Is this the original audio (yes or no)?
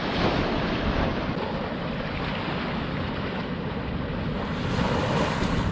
yes